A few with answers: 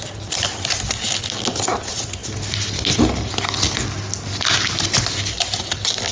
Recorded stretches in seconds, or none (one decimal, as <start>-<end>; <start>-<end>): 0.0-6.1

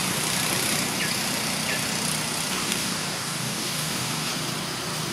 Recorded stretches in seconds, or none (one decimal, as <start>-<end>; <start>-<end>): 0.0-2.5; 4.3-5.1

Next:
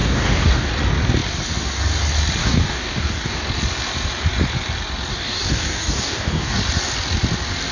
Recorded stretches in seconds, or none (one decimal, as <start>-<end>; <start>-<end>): 0.7-2.4; 3.4-5.1; 6.6-7.7